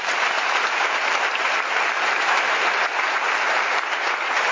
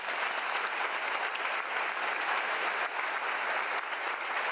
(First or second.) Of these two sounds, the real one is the second